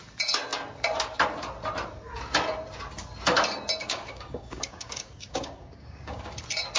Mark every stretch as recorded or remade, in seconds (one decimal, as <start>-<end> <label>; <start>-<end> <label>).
0.0-3.8 recorded; 3.8-6.3 remade; 6.3-6.8 recorded